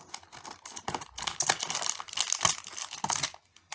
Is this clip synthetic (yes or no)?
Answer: no